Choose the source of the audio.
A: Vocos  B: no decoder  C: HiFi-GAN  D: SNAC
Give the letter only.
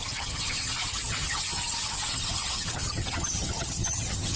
C